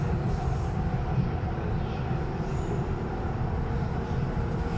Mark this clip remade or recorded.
remade